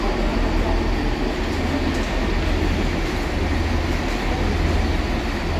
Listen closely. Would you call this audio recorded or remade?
recorded